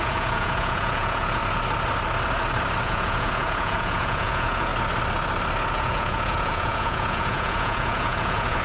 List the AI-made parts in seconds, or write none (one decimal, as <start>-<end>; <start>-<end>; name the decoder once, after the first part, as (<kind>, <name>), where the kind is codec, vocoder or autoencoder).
0.0-1.4 (vocoder, Vocos); 2.8-4.7; 5.7-8.6